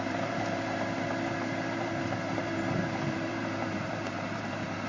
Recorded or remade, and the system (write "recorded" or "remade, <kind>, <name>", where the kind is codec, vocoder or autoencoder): remade, vocoder, BigVGAN v2